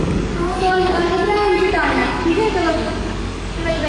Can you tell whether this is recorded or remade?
remade